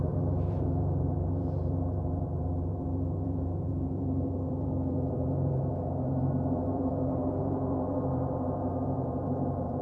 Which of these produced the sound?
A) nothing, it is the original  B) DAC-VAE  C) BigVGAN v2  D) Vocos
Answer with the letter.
C